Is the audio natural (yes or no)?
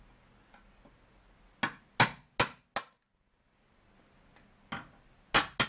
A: yes